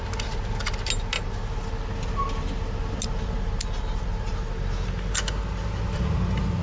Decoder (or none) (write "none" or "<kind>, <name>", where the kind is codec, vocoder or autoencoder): none